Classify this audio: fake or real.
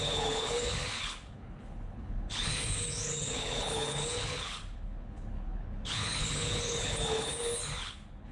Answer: fake